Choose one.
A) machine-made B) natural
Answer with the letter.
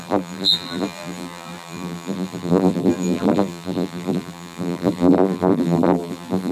A